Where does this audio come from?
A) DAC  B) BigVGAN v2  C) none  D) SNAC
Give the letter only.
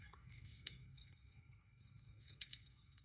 D